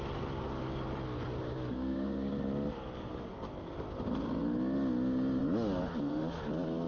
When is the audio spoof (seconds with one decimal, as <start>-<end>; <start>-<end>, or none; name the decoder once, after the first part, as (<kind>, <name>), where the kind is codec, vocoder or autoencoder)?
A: 1.5-2.3 (codec, DAC)